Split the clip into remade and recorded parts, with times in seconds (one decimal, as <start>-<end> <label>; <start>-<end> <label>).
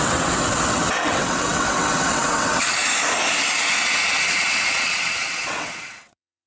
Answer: 0.0-2.8 remade; 2.8-4.2 recorded; 4.2-6.5 remade